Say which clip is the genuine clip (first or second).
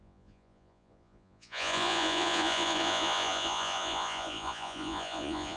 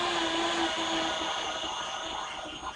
second